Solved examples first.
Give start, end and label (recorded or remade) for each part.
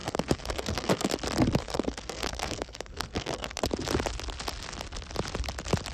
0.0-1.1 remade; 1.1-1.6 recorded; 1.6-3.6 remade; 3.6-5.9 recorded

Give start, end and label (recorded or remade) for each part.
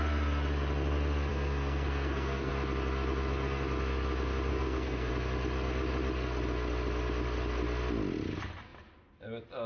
0.0-1.3 recorded; 1.3-2.5 remade; 2.5-4.5 recorded; 4.5-5.1 remade; 5.1-9.7 recorded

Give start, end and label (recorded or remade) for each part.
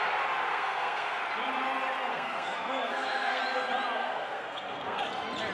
0.0-0.5 recorded; 0.5-1.2 remade; 1.2-2.1 recorded; 2.1-3.4 remade; 3.4-4.0 recorded; 4.0-5.0 remade; 5.0-5.5 recorded